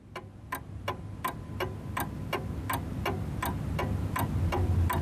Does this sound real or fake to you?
real